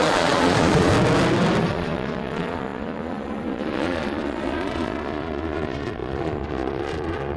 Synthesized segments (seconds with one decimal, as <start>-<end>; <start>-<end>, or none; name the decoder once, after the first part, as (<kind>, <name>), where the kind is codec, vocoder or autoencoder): 0.0-0.9 (vocoder, Vocos); 1.6-7.4